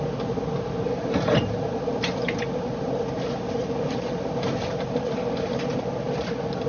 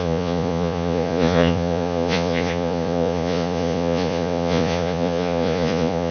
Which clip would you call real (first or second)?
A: first